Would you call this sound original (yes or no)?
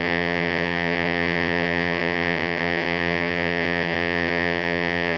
no